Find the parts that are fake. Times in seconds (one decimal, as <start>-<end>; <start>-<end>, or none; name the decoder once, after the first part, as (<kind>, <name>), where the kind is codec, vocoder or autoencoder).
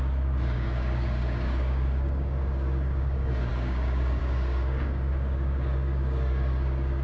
0.0-7.0 (codec, DAC)